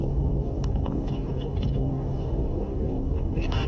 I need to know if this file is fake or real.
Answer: fake